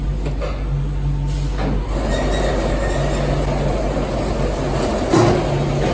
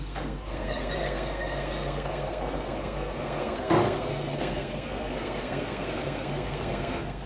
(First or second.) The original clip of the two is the first